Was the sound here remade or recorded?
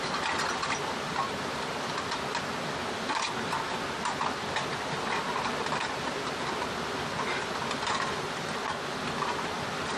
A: recorded